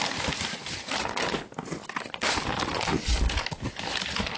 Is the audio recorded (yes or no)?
yes